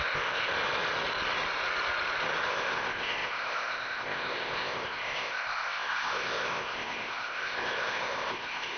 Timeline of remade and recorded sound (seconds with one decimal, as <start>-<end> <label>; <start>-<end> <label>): 0.0-0.5 remade; 0.5-2.5 recorded; 2.5-8.8 remade